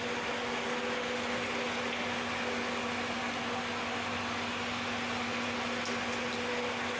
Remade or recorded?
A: recorded